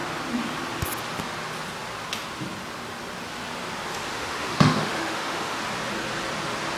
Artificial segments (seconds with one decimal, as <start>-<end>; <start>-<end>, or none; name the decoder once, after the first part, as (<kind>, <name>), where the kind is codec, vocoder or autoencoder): 4.1-5.6 (autoencoder, DAC-VAE)